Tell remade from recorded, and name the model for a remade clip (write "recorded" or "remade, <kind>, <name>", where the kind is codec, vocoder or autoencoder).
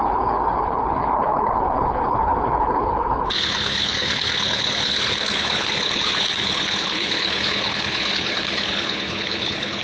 remade, codec, HILCodec